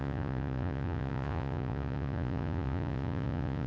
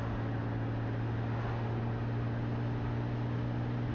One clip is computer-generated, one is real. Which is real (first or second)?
second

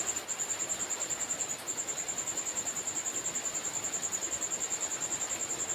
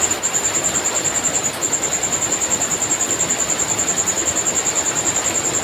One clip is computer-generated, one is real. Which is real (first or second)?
first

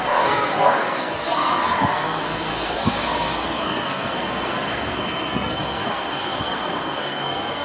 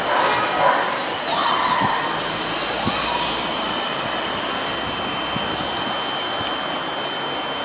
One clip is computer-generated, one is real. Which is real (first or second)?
second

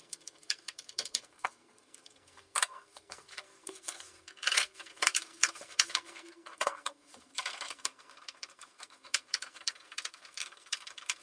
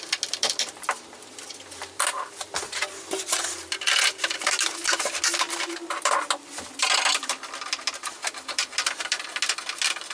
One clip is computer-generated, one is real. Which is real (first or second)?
second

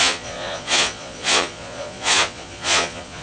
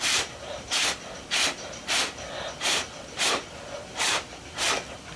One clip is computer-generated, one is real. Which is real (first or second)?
second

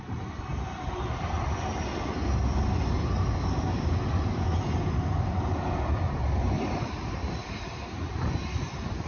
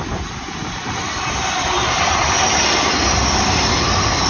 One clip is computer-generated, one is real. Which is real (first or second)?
first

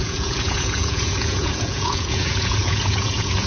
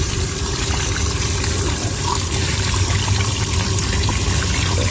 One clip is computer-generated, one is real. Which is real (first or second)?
second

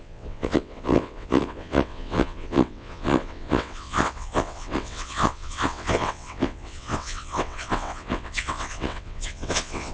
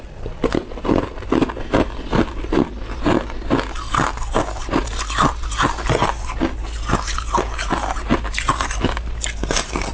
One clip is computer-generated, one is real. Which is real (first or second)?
second